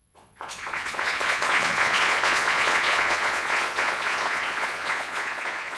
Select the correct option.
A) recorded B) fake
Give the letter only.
B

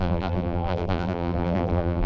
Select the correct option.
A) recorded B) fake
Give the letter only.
B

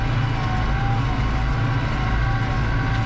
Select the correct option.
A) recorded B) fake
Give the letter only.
A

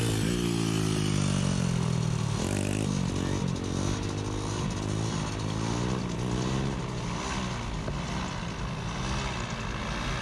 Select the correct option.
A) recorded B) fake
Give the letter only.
A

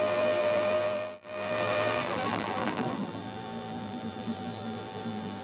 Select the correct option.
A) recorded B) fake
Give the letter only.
B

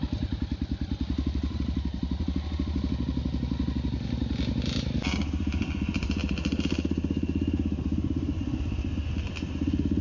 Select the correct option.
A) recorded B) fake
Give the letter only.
A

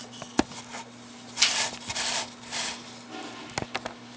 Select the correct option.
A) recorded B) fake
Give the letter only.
A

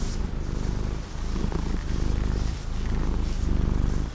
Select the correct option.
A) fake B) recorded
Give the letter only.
B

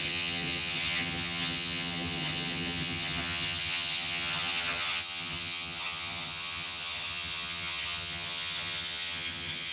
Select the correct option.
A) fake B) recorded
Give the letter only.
A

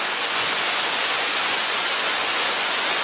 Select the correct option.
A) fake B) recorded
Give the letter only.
A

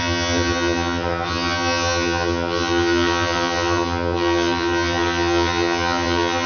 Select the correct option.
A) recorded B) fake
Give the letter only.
B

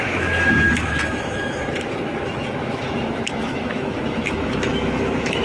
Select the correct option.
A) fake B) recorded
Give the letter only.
A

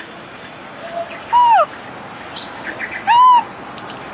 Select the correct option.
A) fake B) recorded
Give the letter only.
B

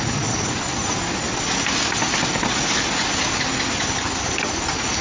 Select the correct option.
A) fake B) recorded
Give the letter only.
B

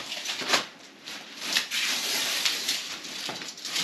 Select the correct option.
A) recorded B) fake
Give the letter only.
B